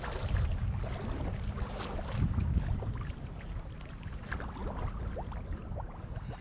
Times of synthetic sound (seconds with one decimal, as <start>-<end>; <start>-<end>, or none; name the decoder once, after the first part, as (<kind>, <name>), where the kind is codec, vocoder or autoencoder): none